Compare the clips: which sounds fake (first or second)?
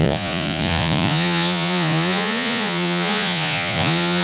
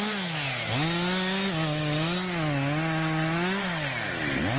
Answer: first